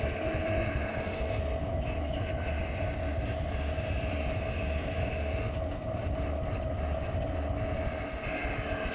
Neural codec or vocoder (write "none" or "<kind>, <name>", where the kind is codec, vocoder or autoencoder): none